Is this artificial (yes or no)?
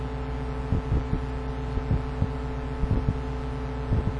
no